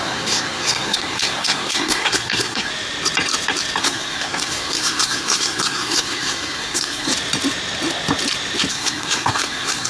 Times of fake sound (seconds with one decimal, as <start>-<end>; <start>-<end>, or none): 0.0-2.7; 3.8-7.1; 8.7-9.9